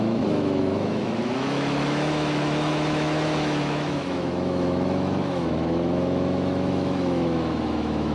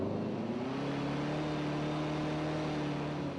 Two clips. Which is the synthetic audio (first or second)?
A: first